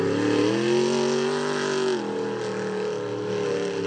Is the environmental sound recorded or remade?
recorded